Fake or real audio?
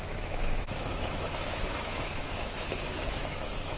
fake